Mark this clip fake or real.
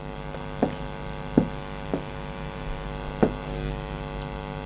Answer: real